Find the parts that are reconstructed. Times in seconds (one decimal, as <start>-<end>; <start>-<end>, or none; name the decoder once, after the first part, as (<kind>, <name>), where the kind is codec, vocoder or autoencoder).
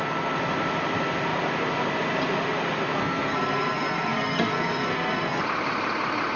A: 3.0-5.4 (codec, SNAC)